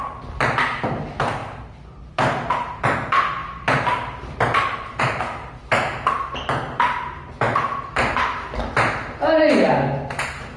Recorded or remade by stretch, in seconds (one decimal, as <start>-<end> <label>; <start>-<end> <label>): 0.0-1.4 recorded; 1.4-2.8 remade; 2.8-3.4 recorded; 3.4-5.0 remade; 5.0-10.6 recorded